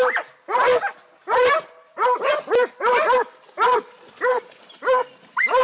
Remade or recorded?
recorded